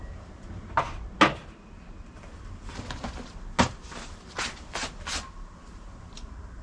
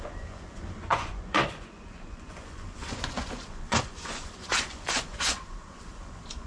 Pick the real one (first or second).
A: first